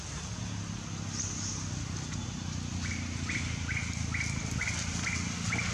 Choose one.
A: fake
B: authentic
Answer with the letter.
B